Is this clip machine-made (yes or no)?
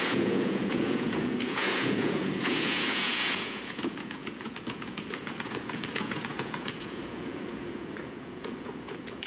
yes